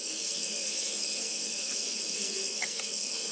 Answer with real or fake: fake